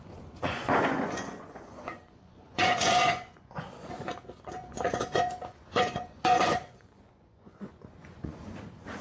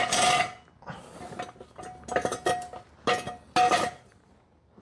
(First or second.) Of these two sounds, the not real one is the first